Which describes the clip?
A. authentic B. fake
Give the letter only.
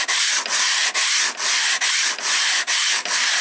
A